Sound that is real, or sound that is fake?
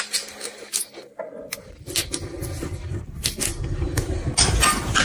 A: real